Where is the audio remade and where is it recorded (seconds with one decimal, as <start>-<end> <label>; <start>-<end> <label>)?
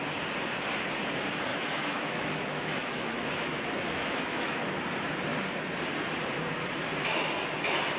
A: 0.0-1.5 recorded; 1.5-4.8 remade; 4.8-8.0 recorded